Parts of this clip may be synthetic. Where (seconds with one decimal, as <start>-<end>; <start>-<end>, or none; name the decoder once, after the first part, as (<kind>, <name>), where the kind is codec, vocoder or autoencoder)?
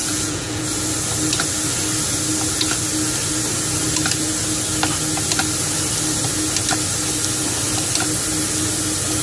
0.0-0.6 (vocoder, Vocos)